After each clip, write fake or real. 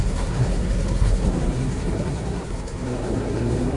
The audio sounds fake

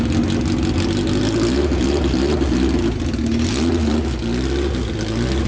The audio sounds real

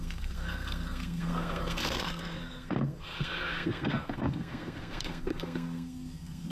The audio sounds fake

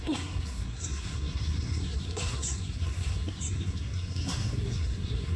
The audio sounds fake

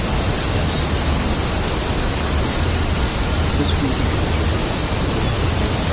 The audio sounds real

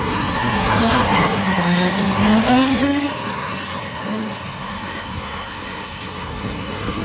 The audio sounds fake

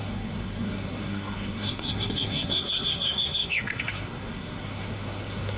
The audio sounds fake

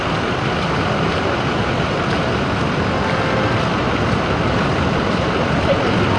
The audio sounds real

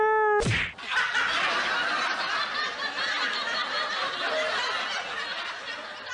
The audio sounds real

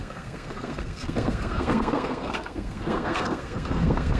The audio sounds fake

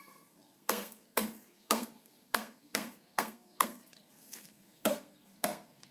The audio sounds fake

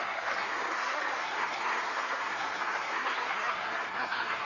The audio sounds fake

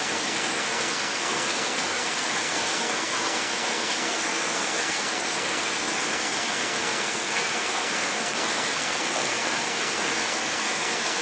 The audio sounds fake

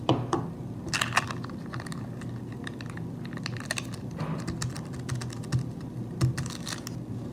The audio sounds real